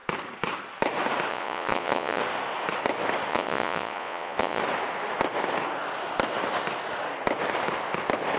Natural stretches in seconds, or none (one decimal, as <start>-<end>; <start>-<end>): 0.0-1.3; 2.2-3.3; 4.6-8.4